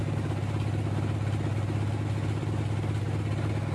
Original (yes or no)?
yes